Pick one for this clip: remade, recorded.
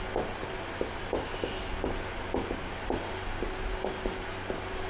recorded